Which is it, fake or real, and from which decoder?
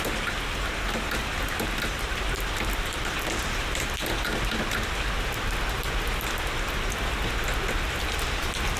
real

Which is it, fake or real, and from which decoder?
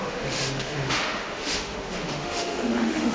fake, autoencoder, DAC-VAE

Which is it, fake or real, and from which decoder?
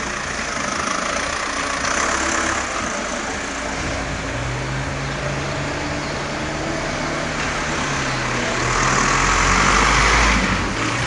real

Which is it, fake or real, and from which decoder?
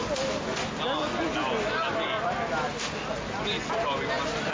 real